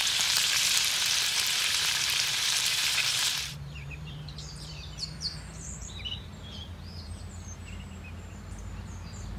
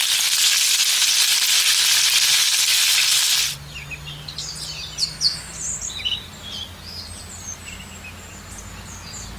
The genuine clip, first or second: second